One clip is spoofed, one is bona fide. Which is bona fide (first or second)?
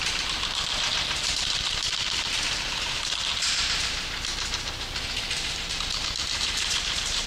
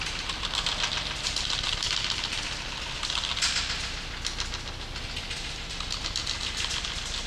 second